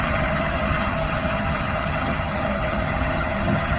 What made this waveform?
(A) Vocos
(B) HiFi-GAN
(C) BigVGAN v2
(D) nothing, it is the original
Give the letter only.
B